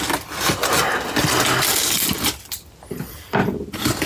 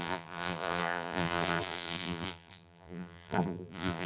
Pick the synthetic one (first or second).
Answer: second